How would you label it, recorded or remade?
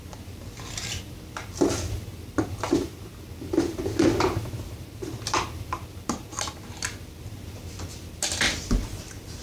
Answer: remade